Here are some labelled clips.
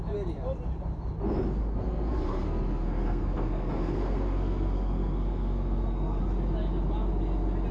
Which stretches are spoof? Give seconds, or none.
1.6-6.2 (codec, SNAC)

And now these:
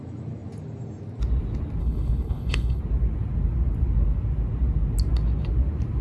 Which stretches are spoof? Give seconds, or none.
1.8-2.8 (codec, HILCodec)

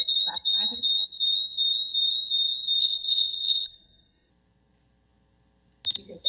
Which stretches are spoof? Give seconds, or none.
2.8-4.3 (codec, SNAC)

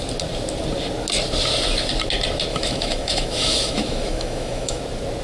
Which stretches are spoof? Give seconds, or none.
2.5-4.8 (autoencoder, DAC-VAE)

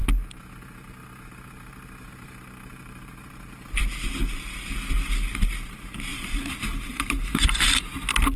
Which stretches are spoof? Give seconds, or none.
6.1-7.8 (vocoder, BigVGAN v2)

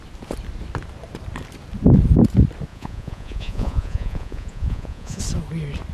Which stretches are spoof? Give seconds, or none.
2.7-5.2 (vocoder, Vocos)